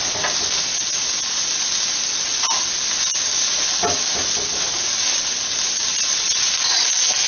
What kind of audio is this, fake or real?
real